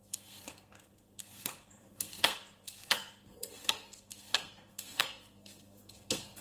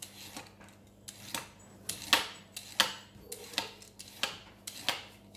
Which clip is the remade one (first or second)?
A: first